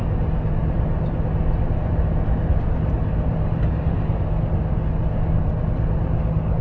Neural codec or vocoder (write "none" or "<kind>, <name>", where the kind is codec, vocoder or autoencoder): none